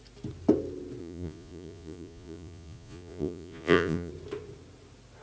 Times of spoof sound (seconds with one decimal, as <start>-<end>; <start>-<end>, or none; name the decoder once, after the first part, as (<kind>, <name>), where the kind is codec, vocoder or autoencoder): 1.0-4.1 (vocoder, Vocos)